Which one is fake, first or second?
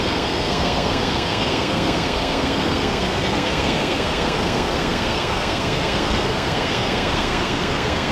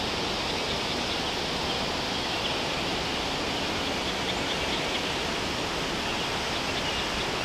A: first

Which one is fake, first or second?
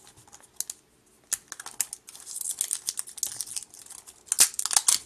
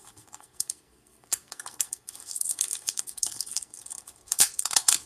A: second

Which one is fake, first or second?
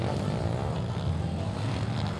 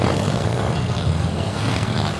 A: second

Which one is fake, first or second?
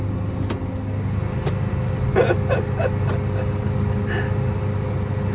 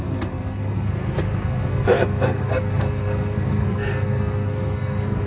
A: second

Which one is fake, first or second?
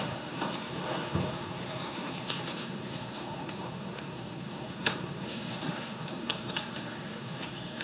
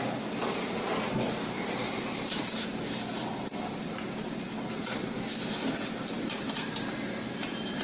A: first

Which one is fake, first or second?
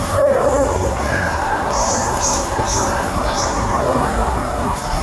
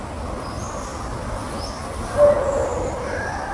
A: first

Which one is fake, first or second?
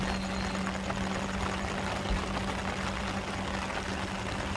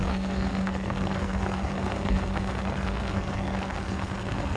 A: second